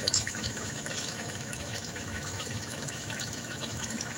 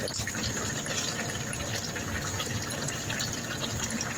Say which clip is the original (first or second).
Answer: second